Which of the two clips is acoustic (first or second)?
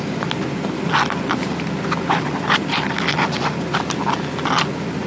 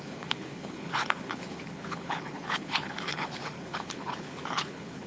first